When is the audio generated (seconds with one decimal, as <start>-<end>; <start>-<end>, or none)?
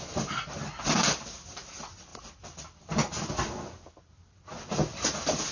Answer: 1.0-1.5; 2.1-3.3